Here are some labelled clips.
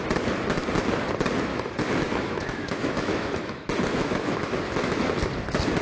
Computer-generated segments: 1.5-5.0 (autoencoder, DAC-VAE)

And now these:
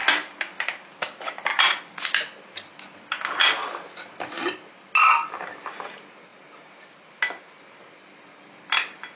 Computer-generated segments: 1.5-2.0 (vocoder, Vocos)